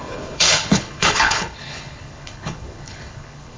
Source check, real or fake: fake